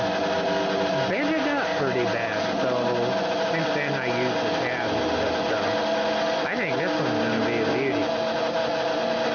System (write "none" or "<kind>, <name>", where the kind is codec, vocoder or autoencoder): none